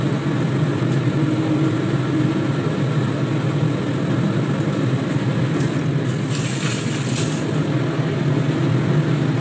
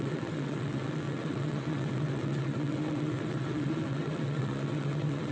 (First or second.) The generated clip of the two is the second